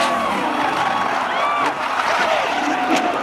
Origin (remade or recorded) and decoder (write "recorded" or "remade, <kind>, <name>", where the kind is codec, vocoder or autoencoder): recorded